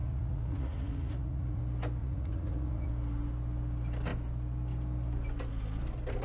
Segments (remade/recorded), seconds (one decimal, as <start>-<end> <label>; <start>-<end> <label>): 0.0-1.6 remade; 1.6-2.0 recorded; 2.0-2.9 remade; 2.9-6.2 recorded